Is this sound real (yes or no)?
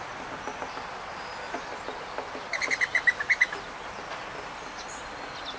yes